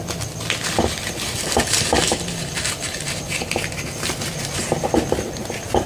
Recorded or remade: recorded